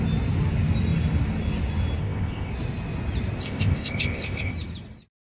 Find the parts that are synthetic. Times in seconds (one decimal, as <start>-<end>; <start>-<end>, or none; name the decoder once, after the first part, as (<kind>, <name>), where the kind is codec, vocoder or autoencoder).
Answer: 2.0-2.5 (codec, ZipCodec); 3.4-4.5